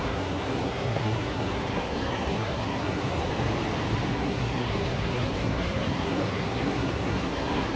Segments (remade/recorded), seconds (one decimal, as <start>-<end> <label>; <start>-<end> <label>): 0.0-3.3 remade; 3.3-4.1 recorded; 4.1-7.8 remade